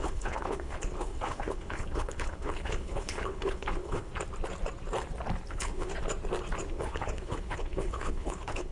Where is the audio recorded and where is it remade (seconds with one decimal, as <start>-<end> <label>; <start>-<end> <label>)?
0.0-4.1 remade; 4.1-5.5 recorded; 5.5-5.9 remade; 5.9-6.7 recorded; 6.7-8.7 remade